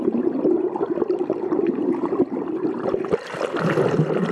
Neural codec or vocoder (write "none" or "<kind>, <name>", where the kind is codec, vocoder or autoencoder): none